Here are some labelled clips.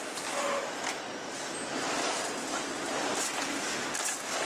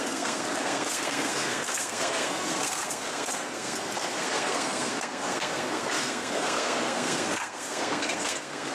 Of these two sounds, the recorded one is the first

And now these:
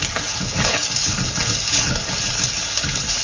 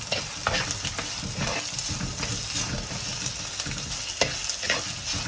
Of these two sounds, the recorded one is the second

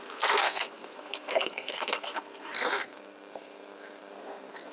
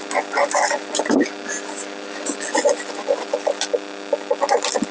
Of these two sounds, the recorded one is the second